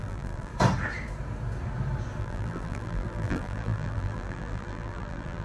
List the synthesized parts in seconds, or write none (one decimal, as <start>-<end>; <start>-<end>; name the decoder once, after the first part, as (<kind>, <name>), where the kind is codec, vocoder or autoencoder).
0.0-0.5 (vocoder, BigVGAN v2); 2.2-5.4